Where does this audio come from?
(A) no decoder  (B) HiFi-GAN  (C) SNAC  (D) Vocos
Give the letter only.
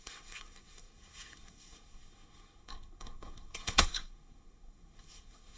C